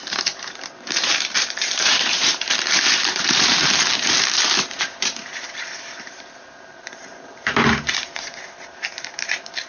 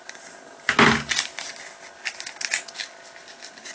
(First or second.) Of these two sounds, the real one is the second